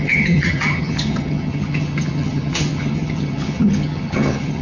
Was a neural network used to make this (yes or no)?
yes